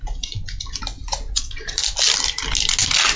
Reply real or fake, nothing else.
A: real